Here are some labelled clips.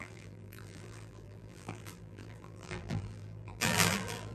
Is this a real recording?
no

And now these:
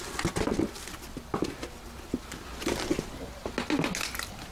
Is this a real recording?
yes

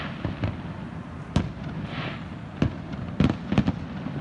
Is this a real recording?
yes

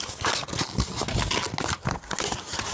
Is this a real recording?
yes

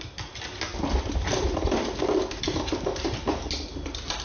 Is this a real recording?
yes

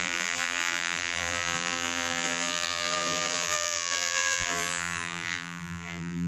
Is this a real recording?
no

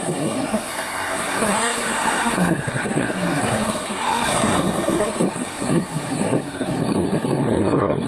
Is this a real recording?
no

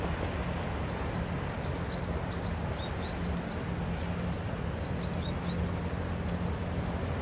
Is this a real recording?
yes